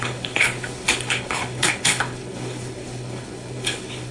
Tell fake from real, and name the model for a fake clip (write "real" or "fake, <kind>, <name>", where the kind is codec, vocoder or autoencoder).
fake, codec, HILCodec